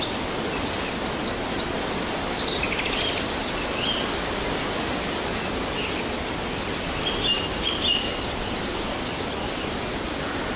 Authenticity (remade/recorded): recorded